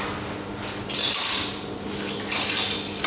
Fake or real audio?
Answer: real